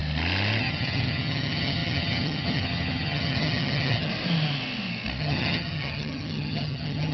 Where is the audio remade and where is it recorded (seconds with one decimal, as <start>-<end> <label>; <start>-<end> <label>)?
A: 0.0-0.6 recorded; 0.6-4.1 remade; 4.1-5.2 recorded; 5.2-7.1 remade